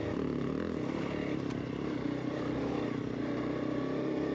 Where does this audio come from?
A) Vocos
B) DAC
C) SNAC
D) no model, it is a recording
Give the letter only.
D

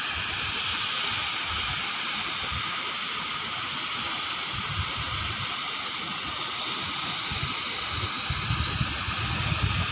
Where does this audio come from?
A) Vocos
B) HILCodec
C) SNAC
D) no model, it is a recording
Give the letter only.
D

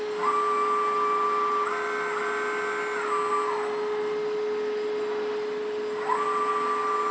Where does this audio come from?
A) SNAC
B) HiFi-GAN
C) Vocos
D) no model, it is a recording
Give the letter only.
D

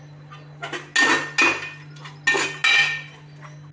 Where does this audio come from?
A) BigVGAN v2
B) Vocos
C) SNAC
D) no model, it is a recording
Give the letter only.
D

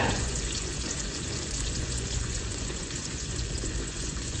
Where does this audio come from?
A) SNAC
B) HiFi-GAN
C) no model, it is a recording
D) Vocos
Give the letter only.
D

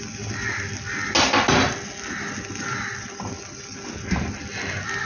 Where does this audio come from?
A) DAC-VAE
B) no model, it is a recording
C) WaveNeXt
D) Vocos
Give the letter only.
B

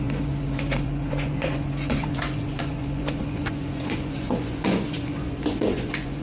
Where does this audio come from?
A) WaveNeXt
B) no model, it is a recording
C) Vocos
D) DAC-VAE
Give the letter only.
C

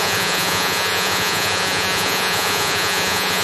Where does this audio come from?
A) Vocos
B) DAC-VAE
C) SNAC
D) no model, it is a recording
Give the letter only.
A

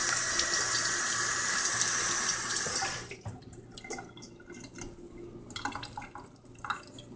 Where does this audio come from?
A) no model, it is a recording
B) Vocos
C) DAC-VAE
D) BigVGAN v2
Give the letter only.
A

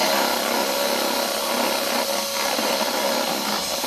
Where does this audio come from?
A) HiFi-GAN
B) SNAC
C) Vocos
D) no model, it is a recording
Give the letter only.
D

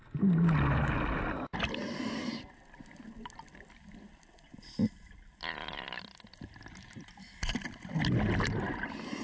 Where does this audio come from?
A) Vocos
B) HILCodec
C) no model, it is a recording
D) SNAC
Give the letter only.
C